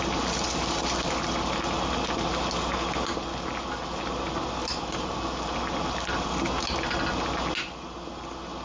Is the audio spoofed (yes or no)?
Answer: no